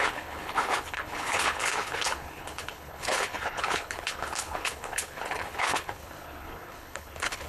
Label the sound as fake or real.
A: fake